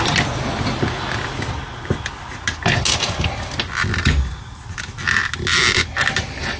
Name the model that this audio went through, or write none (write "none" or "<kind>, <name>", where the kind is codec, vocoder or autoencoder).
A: none